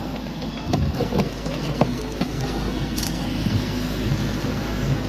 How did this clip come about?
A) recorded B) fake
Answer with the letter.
B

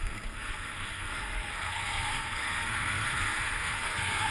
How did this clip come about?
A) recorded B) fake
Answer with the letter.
B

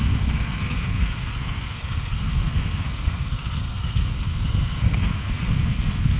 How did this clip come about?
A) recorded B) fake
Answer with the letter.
B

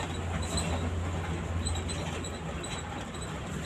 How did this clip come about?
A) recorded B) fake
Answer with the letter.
A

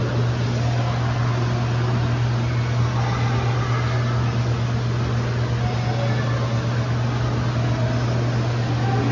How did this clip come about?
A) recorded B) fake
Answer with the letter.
A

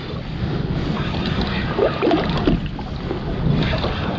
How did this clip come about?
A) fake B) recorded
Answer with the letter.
B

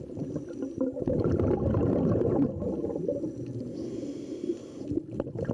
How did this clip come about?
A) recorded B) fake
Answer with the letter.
A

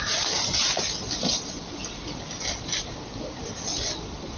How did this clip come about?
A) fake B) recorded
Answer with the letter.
B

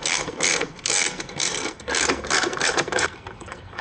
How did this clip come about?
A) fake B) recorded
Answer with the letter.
A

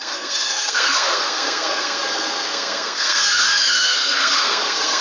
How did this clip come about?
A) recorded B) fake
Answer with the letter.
B